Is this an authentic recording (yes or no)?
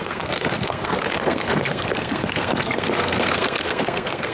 no